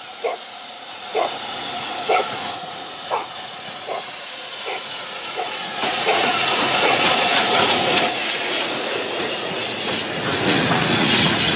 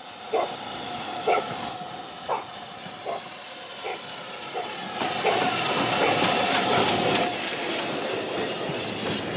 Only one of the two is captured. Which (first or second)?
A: second